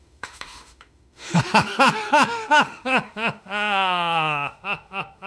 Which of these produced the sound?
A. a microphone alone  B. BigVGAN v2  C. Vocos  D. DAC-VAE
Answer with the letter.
D